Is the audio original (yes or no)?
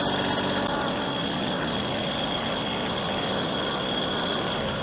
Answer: yes